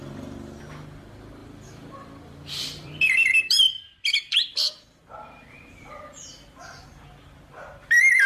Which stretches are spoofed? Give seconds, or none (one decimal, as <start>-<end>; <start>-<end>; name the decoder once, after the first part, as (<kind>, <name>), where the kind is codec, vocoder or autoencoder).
0.0-0.6 (vocoder, BigVGAN v2); 1.4-5.0